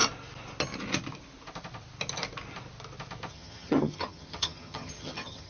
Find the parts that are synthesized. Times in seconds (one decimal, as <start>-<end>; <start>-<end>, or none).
3.3-5.5